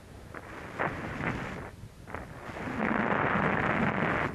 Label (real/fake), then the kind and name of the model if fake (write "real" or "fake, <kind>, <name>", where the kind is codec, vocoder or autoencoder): real